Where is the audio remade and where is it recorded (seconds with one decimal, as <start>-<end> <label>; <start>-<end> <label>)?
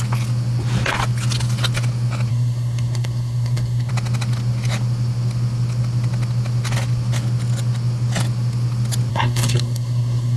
0.0-2.3 recorded; 2.3-3.9 remade; 3.9-9.1 recorded; 9.1-10.4 remade